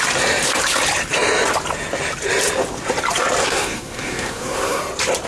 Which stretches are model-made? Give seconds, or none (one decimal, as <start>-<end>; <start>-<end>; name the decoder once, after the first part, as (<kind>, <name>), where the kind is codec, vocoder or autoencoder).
3.4-4.8 (codec, SNAC)